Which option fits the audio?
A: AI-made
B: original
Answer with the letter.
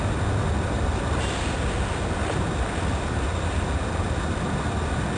B